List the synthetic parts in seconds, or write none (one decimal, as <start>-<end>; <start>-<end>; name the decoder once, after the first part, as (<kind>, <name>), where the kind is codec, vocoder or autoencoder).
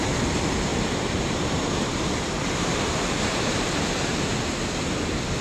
0.7-2.0 (vocoder, BigVGAN v2); 2.7-3.7